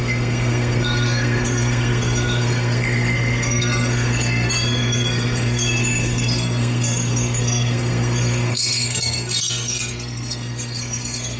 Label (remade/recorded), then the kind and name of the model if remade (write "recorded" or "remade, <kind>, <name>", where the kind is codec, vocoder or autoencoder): remade, codec, SNAC